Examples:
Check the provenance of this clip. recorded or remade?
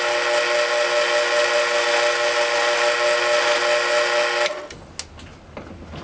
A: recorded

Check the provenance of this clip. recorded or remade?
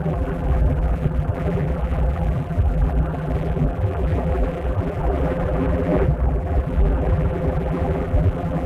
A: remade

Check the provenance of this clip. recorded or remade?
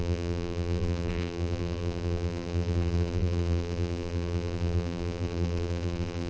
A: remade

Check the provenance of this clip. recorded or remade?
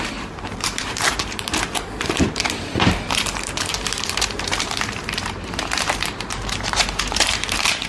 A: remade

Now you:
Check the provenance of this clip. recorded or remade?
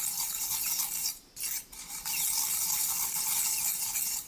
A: recorded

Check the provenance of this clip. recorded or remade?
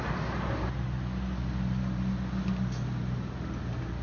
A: recorded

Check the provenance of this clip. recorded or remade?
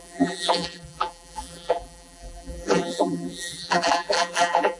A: remade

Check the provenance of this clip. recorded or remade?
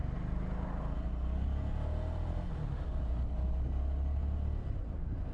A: recorded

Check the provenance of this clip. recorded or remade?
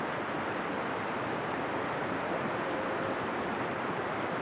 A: remade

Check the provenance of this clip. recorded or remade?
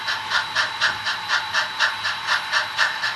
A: remade